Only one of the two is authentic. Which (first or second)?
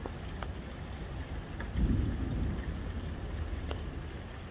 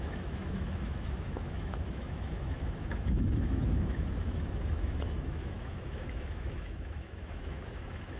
first